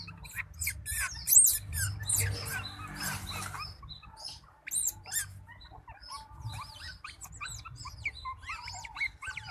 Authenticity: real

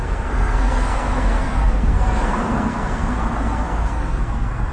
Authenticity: fake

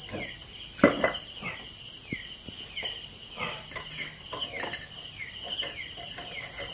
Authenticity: real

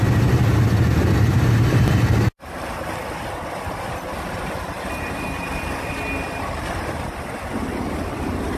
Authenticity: real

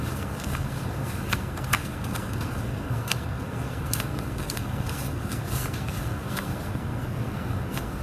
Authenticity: fake